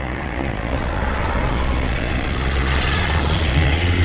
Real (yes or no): no